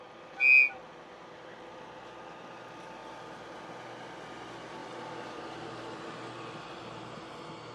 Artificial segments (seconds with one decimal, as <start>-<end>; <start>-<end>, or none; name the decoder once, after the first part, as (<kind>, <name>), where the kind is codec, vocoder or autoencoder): 3.0-3.6 (vocoder, BigVGAN v2)